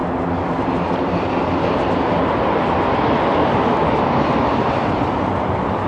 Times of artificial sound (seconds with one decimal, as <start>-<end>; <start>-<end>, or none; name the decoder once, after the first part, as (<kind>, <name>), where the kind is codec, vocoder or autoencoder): none